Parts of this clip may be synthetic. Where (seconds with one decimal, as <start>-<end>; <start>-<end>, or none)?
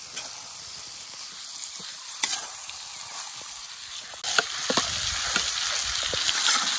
1.9-2.5